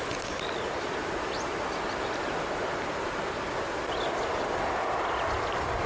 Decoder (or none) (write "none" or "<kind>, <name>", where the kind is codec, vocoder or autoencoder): none